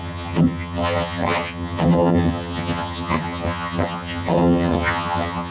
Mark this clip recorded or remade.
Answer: remade